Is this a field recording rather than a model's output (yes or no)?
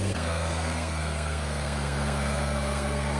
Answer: no